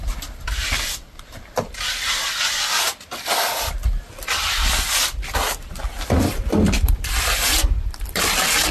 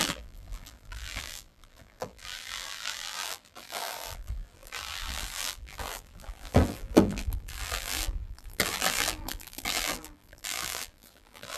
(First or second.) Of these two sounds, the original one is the first